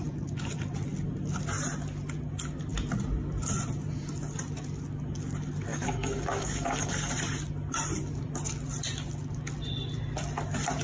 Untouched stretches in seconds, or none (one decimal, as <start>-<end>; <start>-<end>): 0.0-5.7; 7.1-10.8